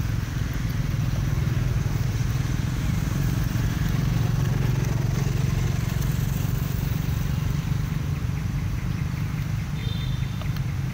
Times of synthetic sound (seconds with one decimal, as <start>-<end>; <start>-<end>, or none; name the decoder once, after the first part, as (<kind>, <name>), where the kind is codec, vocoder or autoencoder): 6.1-9.0 (vocoder, BigVGAN v2); 9.8-10.9